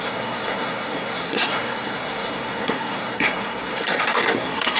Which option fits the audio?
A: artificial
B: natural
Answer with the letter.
A